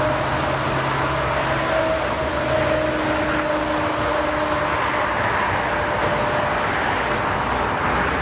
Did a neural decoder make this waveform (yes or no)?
no